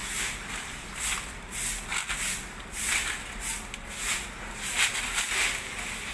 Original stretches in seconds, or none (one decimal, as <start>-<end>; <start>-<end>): 0.0-6.1